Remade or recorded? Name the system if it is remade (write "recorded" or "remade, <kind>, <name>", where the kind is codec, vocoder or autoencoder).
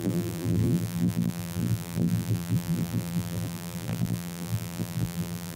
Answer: remade, vocoder, BigVGAN v2